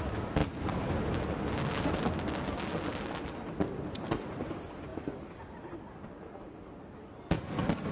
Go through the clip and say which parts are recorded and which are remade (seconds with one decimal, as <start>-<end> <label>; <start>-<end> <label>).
0.0-7.9 recorded